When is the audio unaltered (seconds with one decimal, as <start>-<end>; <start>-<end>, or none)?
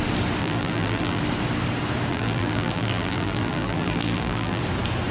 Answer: 0.0-0.4; 1.2-2.1; 4.6-5.1